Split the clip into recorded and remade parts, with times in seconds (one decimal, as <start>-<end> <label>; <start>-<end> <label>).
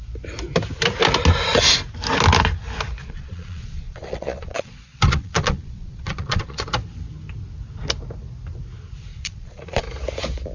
0.0-3.0 recorded; 3.0-6.7 remade; 6.7-9.1 recorded; 9.1-9.8 remade; 9.8-10.5 recorded